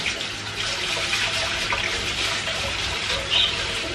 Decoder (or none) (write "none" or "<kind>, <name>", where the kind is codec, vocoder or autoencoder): none